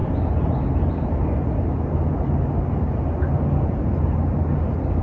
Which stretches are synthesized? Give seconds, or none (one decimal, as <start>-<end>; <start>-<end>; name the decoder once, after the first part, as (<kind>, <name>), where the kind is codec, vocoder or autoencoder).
none